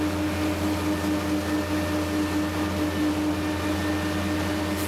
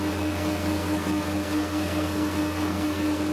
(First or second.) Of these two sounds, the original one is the first